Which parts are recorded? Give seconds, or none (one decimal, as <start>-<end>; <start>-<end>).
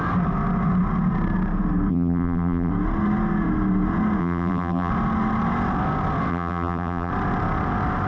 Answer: 0.0-1.9; 2.7-4.2; 4.9-6.3; 7.1-8.1